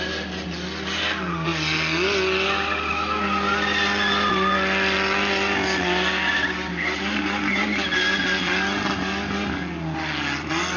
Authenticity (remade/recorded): recorded